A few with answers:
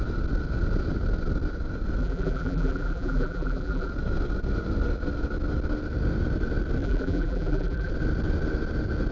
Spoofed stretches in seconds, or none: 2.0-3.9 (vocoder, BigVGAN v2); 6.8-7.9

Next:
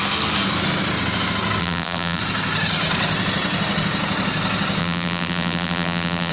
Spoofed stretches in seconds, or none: 1.6-2.2 (vocoder, BigVGAN v2); 4.8-6.3

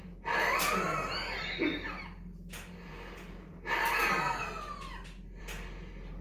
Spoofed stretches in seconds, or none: none

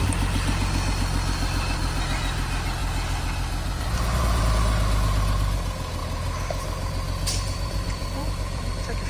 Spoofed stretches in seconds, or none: 2.8-4.4 (vocoder, BigVGAN v2); 6.0-9.1

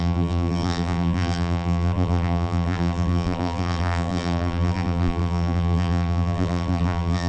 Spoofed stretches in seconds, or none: 0.0-7.3 (vocoder, BigVGAN v2)

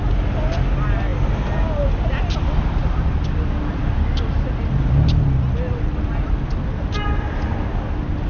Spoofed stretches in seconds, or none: none

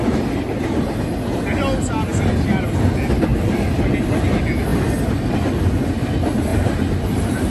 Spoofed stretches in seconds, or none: 2.1-2.8 (vocoder, BigVGAN v2); 3.3-3.9; 6.5-7.5